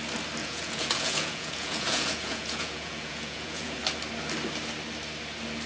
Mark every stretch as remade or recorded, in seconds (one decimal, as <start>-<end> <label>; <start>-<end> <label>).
0.0-0.4 recorded; 0.4-3.8 remade; 3.8-5.7 recorded